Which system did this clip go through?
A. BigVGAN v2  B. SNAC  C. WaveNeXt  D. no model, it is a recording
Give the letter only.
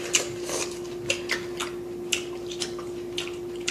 A